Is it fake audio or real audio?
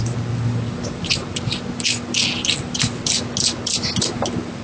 real